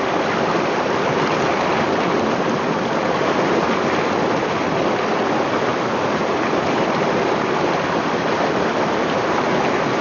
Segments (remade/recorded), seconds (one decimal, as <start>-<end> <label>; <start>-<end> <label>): 0.0-10.0 recorded